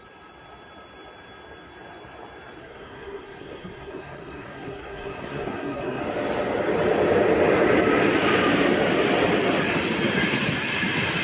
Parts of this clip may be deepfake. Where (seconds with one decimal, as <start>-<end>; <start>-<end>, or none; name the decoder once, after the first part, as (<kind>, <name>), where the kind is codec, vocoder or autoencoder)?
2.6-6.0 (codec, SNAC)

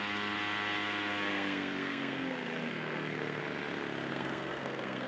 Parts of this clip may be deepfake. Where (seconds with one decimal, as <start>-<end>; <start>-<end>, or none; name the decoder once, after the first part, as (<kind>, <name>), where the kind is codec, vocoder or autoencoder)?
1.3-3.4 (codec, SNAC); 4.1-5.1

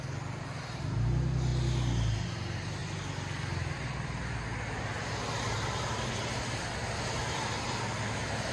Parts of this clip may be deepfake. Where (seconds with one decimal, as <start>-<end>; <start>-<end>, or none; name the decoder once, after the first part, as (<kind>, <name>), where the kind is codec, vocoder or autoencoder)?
none